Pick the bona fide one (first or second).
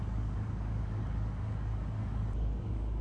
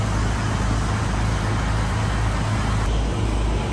second